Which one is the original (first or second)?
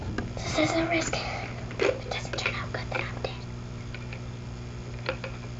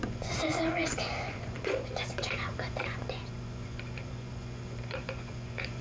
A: first